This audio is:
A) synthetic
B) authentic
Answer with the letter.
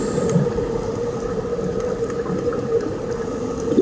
B